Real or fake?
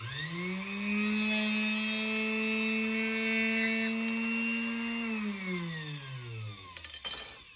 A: real